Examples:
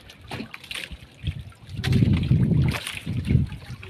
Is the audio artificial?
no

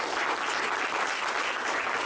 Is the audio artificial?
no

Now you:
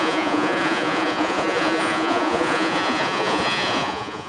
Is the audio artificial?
yes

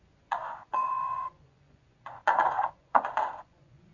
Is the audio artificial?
yes